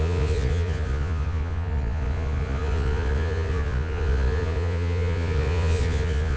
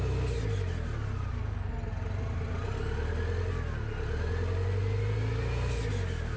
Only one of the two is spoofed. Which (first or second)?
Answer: first